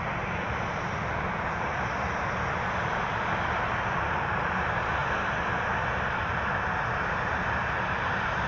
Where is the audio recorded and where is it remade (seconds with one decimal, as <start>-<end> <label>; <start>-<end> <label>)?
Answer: 0.0-5.0 remade; 5.0-7.5 recorded; 7.5-8.5 remade